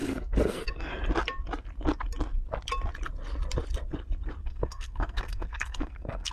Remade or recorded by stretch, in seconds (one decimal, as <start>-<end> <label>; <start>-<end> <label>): 0.0-0.9 remade; 0.9-4.4 recorded; 4.4-6.3 remade